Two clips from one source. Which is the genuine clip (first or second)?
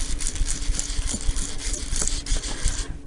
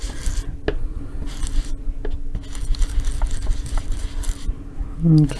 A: second